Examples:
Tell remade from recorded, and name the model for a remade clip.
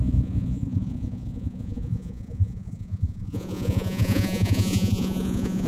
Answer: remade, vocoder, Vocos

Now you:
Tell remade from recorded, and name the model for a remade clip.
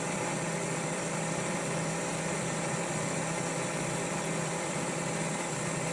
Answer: remade, vocoder, BigVGAN v2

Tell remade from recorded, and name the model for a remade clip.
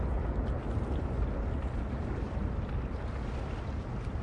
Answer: recorded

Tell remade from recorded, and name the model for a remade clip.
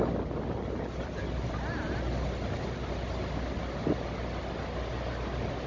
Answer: recorded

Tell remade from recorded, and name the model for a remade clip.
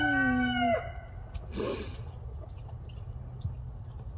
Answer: recorded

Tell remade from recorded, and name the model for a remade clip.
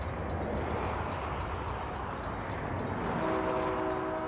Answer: recorded